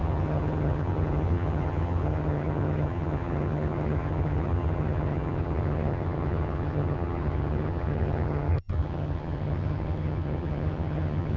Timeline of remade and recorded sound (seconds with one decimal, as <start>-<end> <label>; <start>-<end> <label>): 0.0-11.4 remade